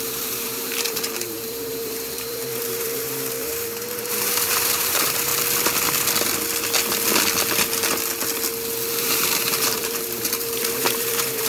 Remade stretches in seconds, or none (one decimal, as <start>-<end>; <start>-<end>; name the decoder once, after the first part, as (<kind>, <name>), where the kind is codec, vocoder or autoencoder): 0.0-5.3 (vocoder, BigVGAN v2); 8.9-11.5